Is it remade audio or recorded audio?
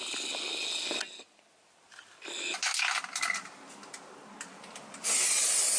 recorded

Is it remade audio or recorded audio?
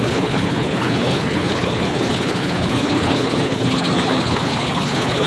remade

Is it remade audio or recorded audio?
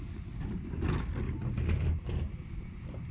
recorded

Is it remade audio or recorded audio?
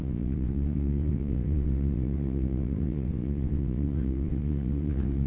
remade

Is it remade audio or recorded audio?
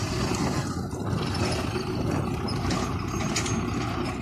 recorded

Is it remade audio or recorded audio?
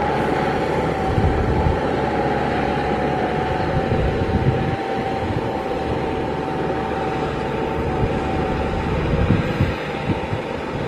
remade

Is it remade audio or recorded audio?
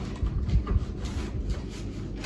recorded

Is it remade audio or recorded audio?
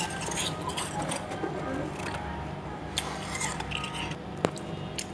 recorded